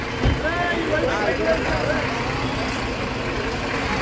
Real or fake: real